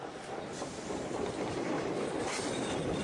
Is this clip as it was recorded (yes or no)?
no